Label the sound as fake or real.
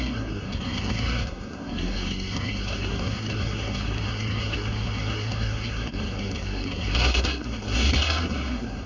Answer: fake